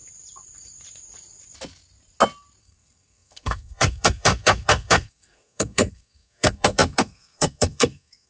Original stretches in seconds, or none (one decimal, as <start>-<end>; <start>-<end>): 0.0-2.6

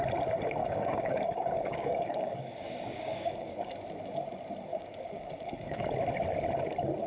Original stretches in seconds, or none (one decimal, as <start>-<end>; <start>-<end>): 0.0-0.6; 3.7-4.7; 5.9-7.1

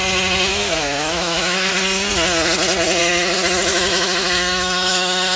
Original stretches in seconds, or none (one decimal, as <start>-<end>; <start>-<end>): 0.0-0.5; 1.7-3.7

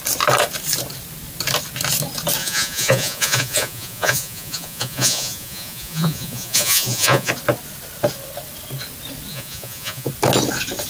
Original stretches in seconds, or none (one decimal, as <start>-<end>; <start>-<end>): 0.0-2.4; 7.3-9.3; 10.1-10.9

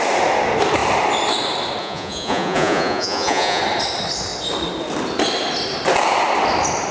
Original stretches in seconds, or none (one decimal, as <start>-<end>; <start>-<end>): 0.0-1.8; 3.6-6.9

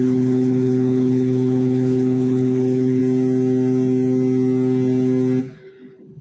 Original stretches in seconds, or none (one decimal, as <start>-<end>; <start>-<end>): 3.0-5.4

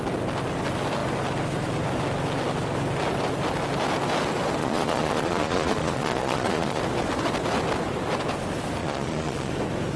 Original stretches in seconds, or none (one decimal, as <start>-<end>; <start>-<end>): 0.0-4.6; 6.8-8.8; 9.5-10.0

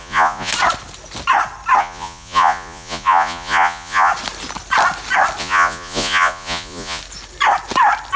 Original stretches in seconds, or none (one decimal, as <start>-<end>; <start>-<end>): 0.5-1.8; 4.1-5.4; 7.0-8.2